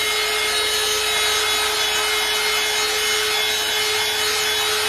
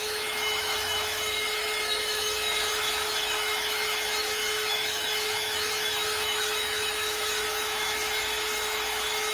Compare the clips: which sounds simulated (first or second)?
second